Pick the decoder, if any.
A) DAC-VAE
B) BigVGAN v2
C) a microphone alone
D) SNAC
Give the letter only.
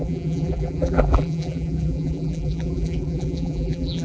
B